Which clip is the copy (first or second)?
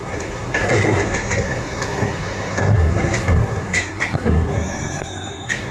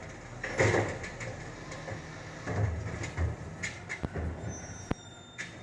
first